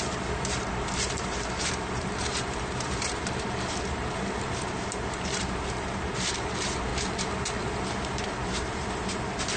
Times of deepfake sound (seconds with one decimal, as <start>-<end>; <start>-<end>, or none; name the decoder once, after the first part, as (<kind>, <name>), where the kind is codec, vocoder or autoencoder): 0.0-6.9 (vocoder, BigVGAN v2); 7.6-9.6